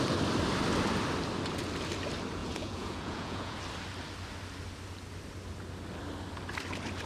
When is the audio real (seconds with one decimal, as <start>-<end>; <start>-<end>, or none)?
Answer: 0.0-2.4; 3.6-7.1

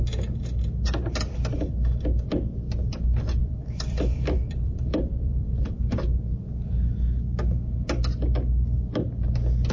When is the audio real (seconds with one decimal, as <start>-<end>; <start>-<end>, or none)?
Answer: 0.0-3.4; 5.8-9.7

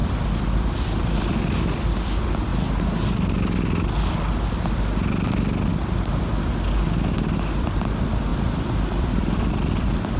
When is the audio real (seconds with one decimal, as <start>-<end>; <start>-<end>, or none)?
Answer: 2.5-7.5

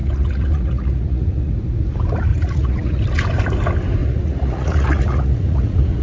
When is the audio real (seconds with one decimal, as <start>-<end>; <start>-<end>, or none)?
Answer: 1.5-2.3; 3.0-4.0

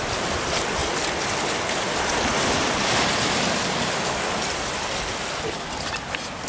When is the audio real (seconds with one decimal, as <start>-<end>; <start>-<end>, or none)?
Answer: 0.0-6.5

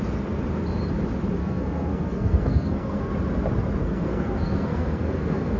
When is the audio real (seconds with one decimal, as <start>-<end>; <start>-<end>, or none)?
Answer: 0.0-1.4; 3.1-3.8